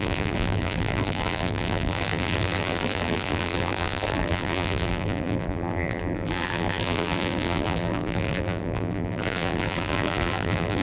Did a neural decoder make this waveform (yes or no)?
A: yes